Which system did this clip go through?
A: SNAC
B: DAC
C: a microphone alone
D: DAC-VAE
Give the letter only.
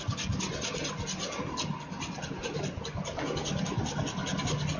C